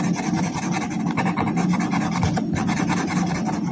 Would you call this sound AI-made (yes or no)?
no